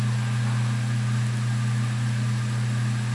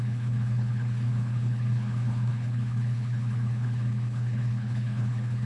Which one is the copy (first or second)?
second